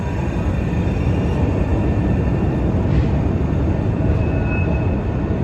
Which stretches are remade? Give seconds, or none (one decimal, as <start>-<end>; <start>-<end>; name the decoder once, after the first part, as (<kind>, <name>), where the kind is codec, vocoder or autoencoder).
none